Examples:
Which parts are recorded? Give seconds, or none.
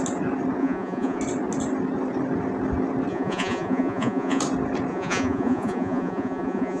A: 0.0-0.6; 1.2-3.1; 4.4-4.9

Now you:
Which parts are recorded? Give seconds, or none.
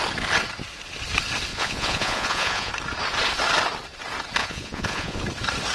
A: 0.0-1.5; 2.7-4.4; 5.2-5.7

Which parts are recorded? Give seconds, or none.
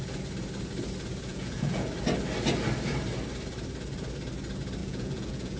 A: 0.0-1.3; 1.9-4.8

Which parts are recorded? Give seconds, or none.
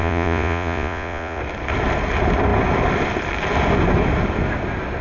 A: 1.4-5.0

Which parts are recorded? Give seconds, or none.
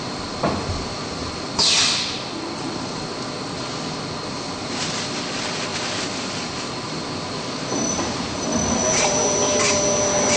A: 0.0-10.4